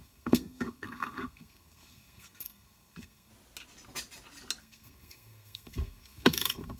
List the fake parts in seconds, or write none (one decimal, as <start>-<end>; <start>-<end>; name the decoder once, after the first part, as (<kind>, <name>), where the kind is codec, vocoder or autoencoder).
0.0-3.3 (codec, SNAC); 4.6-6.8